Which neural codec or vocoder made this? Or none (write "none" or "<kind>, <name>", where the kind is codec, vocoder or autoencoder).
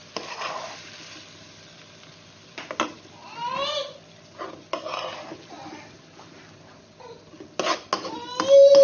none